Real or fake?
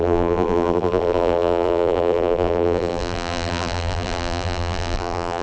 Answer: fake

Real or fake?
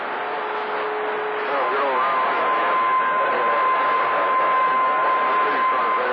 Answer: real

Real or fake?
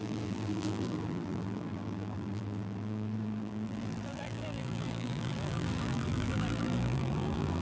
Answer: fake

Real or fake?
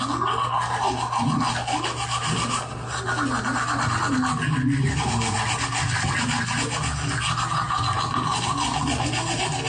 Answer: real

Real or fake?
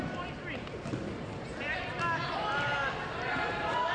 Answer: real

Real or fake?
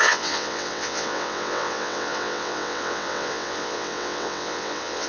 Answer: fake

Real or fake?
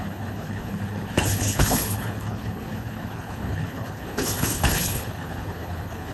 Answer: fake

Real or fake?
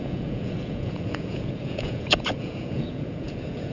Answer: fake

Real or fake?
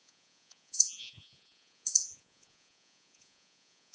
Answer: fake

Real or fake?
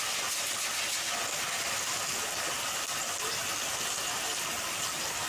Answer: real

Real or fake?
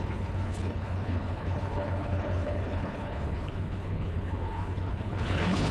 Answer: fake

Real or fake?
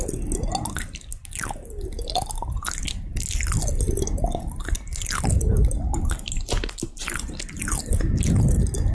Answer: real